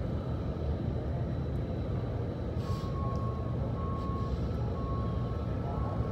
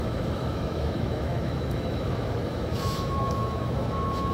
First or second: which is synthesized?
second